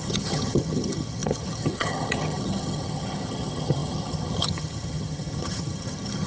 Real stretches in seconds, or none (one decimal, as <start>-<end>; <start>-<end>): none